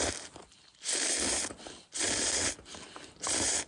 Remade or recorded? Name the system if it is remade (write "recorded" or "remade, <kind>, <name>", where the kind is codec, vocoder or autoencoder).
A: recorded